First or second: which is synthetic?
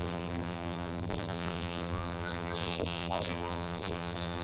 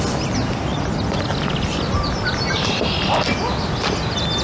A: first